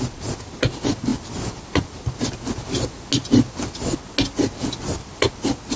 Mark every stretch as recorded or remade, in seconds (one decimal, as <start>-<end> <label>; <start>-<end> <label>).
0.0-5.8 recorded